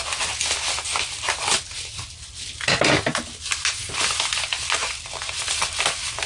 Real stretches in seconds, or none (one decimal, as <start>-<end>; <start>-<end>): 0.0-4.8; 5.6-6.3